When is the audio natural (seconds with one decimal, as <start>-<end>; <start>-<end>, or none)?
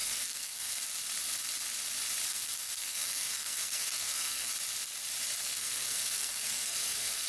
0.8-2.3; 4.5-5.4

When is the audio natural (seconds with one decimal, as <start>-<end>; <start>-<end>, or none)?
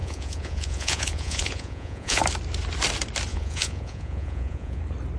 2.2-3.3; 4.8-5.2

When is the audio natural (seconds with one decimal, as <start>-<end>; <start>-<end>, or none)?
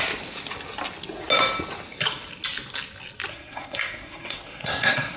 0.0-3.3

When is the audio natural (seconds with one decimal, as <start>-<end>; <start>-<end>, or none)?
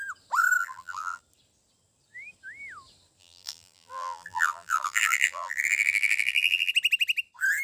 0.0-0.6; 1.2-3.2; 6.7-7.6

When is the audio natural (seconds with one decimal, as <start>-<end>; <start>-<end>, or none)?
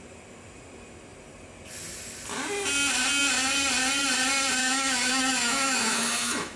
0.0-4.6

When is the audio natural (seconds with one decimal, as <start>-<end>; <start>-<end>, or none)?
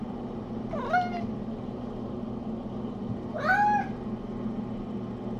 0.0-5.4